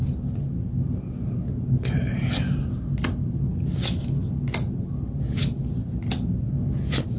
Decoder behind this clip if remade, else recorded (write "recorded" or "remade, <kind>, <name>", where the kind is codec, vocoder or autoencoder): recorded